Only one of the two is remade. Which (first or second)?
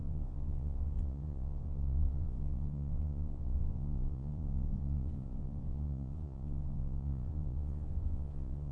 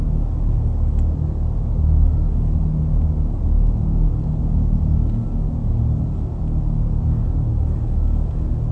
first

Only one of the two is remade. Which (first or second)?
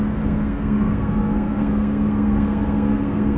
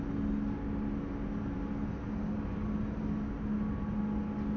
first